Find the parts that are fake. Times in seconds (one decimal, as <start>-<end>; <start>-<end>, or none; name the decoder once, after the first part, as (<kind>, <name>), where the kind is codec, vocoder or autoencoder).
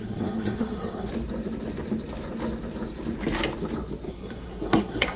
0.0-1.1 (codec, SNAC); 4.1-5.2